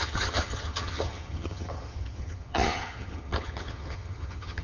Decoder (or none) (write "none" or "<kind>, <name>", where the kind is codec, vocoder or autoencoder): vocoder, HiFi-GAN